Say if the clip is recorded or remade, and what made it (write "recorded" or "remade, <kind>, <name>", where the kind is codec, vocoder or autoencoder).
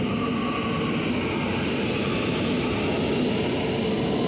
recorded